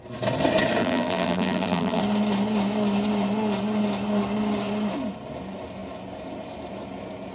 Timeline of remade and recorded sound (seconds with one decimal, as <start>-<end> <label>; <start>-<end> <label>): 0.0-0.8 recorded; 0.8-2.0 remade; 2.0-7.3 recorded